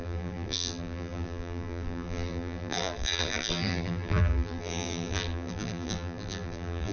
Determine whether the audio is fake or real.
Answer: fake